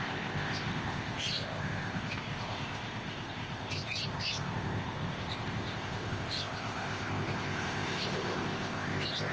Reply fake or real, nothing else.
fake